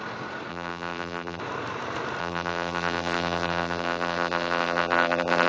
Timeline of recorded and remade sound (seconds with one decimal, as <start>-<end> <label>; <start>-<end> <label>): 0.0-0.5 recorded; 0.5-1.4 remade; 1.4-2.2 recorded; 2.2-5.5 remade